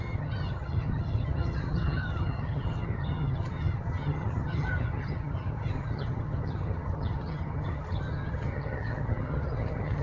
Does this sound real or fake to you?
fake